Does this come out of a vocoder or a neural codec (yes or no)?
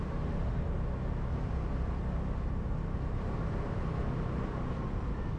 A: no